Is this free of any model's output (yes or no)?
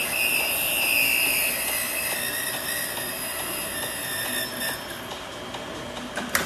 yes